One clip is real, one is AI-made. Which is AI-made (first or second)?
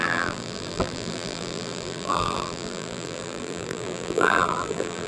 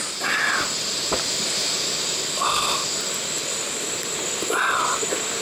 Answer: first